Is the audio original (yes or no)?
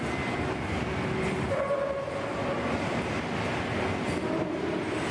yes